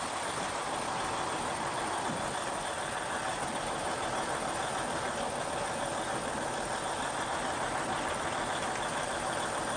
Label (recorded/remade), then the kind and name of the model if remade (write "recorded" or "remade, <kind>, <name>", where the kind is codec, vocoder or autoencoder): recorded